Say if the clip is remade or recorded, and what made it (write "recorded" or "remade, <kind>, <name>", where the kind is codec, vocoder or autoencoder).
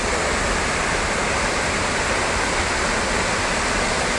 recorded